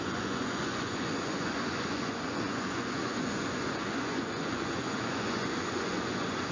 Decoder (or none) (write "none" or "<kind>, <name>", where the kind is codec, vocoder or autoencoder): vocoder, Vocos